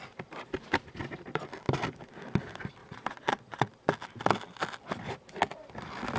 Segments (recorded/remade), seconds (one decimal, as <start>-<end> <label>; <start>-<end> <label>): 0.0-2.8 recorded; 2.8-3.7 remade; 3.7-6.2 recorded

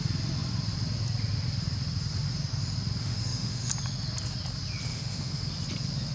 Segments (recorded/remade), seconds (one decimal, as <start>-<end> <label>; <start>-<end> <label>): 0.0-3.0 recorded; 3.0-3.7 remade; 3.7-4.9 recorded; 4.9-5.5 remade; 5.5-6.1 recorded

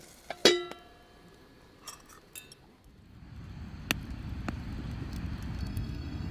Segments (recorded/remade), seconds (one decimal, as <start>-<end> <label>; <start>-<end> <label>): 0.0-5.6 recorded; 5.6-6.3 remade

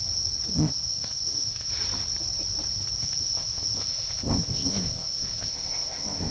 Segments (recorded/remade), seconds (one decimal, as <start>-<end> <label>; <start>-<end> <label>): 0.0-0.5 recorded; 0.5-1.7 remade; 1.7-3.0 recorded; 3.0-6.3 remade

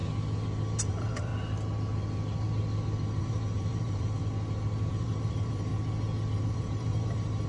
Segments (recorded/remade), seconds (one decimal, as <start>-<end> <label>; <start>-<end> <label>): 0.0-0.8 recorded; 0.8-1.3 remade; 1.3-3.2 recorded; 3.2-4.2 remade; 4.2-4.9 recorded; 4.9-5.7 remade; 5.7-6.4 recorded; 6.4-7.5 remade